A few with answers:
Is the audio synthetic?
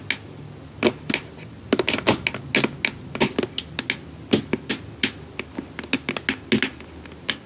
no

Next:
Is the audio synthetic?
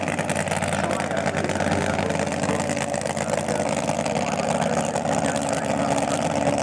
no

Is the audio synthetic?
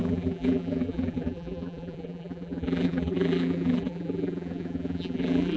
yes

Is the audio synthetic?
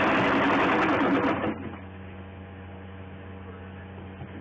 no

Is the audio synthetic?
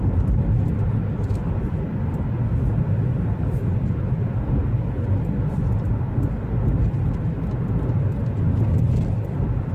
no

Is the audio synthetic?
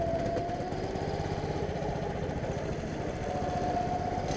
no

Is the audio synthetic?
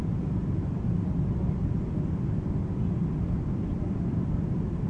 yes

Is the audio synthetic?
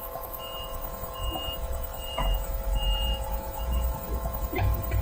yes